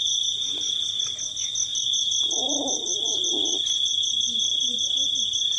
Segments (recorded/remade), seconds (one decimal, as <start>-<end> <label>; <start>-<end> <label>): 0.0-1.7 recorded; 1.7-3.9 remade; 3.9-5.6 recorded